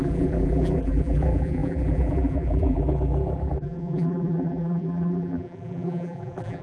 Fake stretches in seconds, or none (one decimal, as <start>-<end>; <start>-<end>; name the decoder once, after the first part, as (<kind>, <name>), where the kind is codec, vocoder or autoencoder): 0.0-6.6 (vocoder, BigVGAN v2)